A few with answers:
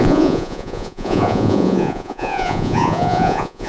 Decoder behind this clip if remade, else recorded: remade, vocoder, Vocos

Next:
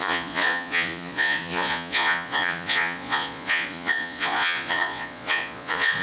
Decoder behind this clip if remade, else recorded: remade, vocoder, Vocos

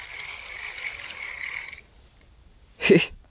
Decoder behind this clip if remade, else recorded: recorded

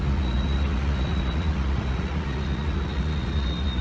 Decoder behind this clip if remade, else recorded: remade, vocoder, Vocos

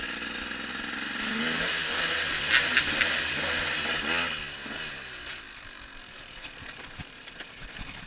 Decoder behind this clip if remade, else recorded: recorded